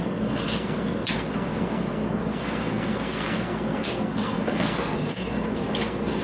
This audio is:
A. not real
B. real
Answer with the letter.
A